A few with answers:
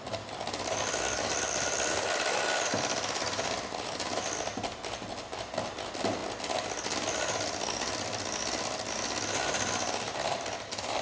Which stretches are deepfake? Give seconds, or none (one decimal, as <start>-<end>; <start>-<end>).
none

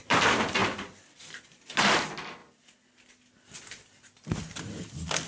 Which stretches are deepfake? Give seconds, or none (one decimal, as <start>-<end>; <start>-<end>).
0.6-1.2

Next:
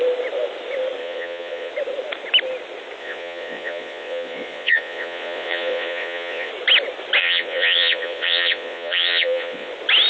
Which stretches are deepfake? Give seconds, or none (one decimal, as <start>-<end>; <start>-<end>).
1.0-1.7; 3.0-6.5; 7.2-9.7

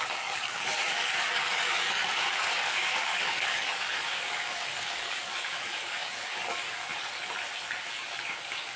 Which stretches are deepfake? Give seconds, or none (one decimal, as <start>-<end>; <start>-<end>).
0.0-6.9; 7.9-8.8